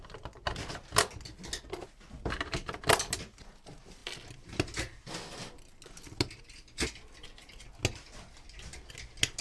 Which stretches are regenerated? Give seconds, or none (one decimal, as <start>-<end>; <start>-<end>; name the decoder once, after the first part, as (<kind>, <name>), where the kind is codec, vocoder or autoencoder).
none

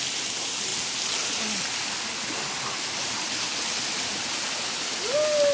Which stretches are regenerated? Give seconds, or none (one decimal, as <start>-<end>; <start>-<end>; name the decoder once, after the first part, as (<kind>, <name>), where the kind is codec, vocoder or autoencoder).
none

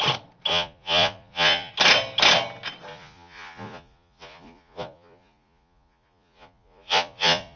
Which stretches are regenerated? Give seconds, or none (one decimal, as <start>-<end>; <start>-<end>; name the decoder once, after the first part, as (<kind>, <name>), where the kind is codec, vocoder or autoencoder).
0.5-1.7 (vocoder, Vocos); 2.9-7.6

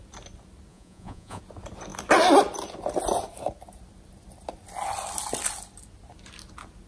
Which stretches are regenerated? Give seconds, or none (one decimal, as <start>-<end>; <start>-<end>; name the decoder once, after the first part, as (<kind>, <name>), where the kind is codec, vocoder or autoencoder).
0.7-1.4 (vocoder, Vocos)

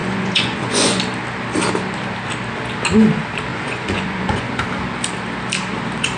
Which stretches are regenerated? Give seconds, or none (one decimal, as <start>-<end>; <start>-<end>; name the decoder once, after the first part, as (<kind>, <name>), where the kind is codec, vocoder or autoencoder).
0.0-1.0 (vocoder, Vocos); 3.5-4.6